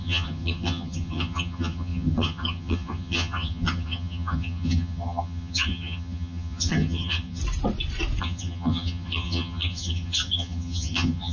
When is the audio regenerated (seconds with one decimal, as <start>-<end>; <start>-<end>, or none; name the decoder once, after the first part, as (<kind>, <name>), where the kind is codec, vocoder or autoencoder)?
0.0-7.4 (vocoder, HiFi-GAN); 8.2-11.3